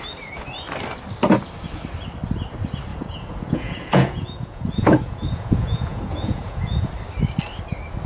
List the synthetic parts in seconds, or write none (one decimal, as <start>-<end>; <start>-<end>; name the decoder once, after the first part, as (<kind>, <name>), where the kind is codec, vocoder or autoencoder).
2.9-6.9 (vocoder, Vocos)